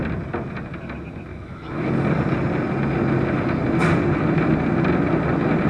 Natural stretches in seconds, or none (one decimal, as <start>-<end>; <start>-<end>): 0.0-1.3; 1.9-5.7